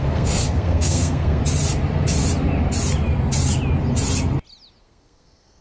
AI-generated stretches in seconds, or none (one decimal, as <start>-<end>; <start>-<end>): 0.0-1.4; 4.8-5.6